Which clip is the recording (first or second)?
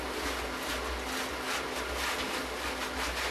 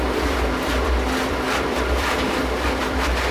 first